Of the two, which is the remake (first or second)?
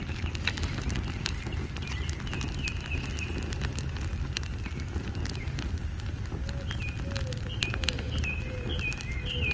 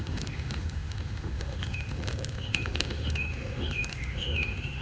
second